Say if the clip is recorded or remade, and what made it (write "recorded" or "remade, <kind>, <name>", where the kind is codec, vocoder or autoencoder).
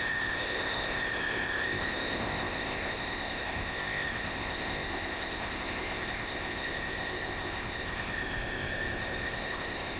remade, codec, ZipCodec